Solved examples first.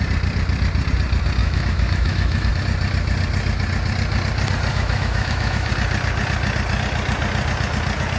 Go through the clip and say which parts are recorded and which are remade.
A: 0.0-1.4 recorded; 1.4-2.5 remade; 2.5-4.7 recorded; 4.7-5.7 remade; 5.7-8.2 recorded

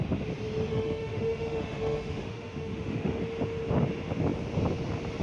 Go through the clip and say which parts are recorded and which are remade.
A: 0.0-0.7 recorded; 0.7-3.2 remade; 3.2-5.2 recorded

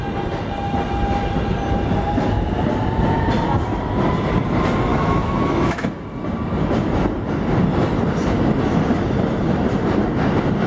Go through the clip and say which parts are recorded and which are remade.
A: 0.0-4.9 recorded; 4.9-5.9 remade; 5.9-10.7 recorded

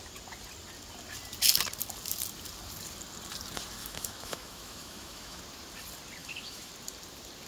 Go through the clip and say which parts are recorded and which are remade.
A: 0.0-3.8 recorded; 3.8-5.4 remade; 5.4-6.2 recorded; 6.2-6.7 remade; 6.7-7.5 recorded